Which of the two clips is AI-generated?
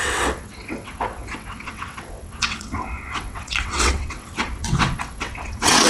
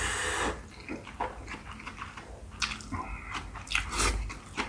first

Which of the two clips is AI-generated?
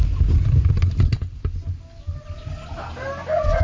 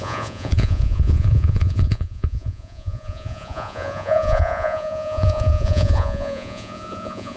second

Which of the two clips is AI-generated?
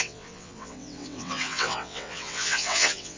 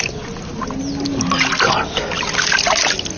first